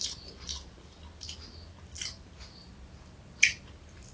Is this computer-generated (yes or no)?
no